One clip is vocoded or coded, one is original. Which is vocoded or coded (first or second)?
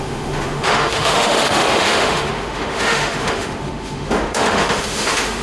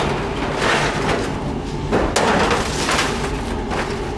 first